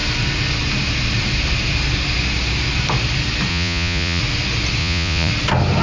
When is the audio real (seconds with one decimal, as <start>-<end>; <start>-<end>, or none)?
0.0-3.5; 4.2-4.8; 5.3-5.8